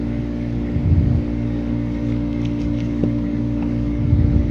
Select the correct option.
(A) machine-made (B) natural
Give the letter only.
A